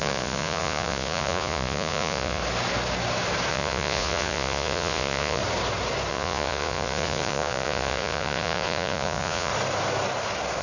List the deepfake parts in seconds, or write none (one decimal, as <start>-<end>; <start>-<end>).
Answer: 0.0-2.4; 3.5-5.4; 6.1-9.5